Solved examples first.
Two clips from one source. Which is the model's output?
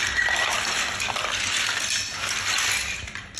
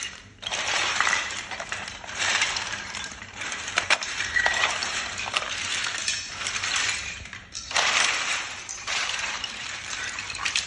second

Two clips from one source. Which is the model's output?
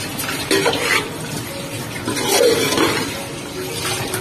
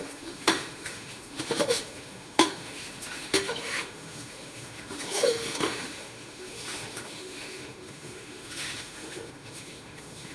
second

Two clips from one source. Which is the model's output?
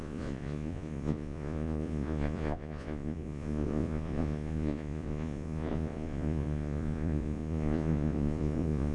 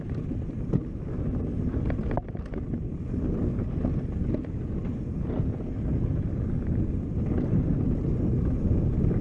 first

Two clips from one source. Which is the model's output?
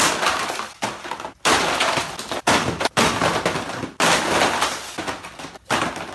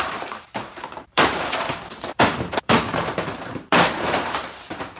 second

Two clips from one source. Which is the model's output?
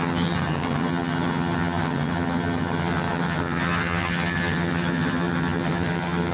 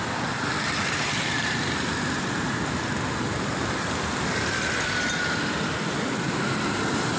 first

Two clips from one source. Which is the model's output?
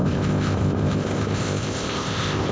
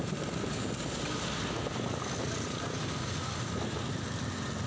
first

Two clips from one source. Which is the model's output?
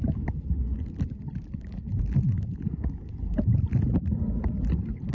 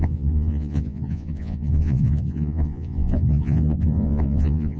second